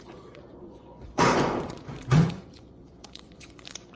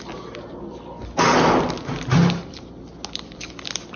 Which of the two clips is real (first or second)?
second